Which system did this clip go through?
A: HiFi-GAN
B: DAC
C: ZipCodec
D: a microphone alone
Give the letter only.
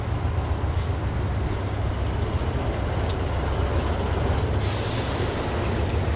D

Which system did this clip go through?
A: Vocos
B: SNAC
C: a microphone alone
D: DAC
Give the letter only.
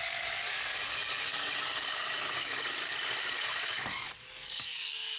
D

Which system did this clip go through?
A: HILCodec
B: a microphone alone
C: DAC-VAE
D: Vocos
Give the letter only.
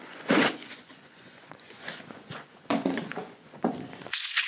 D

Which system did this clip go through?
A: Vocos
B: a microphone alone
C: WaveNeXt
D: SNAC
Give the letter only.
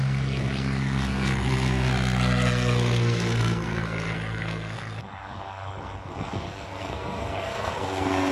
D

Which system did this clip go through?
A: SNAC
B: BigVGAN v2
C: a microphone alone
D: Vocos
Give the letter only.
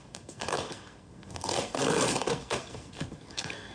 A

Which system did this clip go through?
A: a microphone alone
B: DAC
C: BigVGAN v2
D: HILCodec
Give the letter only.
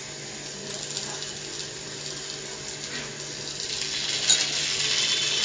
A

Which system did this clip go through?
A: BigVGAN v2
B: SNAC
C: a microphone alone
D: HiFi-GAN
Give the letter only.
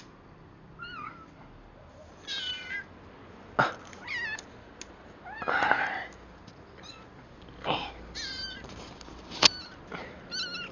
C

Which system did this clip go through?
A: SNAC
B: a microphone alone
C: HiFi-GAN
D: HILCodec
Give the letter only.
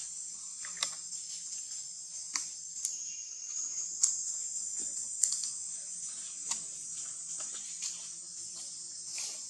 B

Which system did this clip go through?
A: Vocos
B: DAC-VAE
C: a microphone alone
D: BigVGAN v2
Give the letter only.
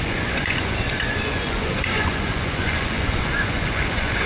A